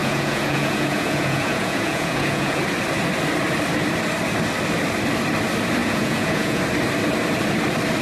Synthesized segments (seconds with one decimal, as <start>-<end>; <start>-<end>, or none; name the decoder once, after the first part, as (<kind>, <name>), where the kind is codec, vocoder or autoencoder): 0.0-2.6 (vocoder, Vocos); 5.8-6.6